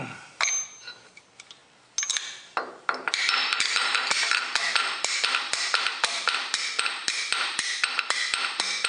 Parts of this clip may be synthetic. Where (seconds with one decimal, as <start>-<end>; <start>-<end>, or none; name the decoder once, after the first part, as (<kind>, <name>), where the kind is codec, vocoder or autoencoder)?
none